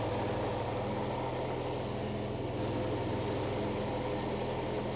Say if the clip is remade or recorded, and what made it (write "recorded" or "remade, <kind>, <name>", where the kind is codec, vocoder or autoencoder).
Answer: recorded